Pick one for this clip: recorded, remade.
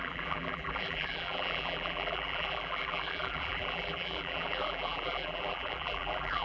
remade